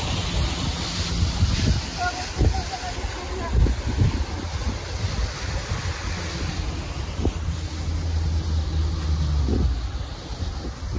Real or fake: real